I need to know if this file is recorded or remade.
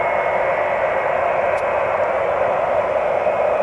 recorded